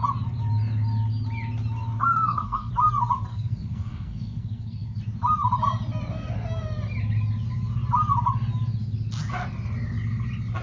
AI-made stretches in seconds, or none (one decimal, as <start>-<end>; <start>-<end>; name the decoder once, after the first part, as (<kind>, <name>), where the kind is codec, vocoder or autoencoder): 2.2-2.7 (codec, SNAC); 3.3-5.0